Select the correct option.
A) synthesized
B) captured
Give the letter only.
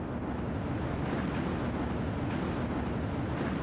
B